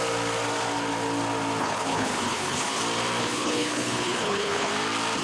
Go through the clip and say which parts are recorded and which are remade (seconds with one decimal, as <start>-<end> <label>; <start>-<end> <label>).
0.0-1.6 recorded; 1.6-2.8 remade; 2.8-3.2 recorded; 3.2-4.7 remade; 4.7-5.2 recorded